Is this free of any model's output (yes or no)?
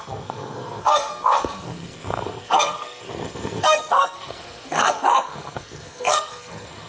no